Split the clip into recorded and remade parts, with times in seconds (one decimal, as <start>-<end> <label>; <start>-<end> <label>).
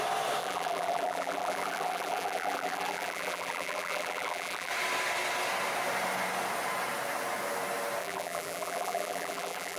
0.0-0.4 recorded; 0.4-4.7 remade; 4.7-8.0 recorded; 8.0-9.8 remade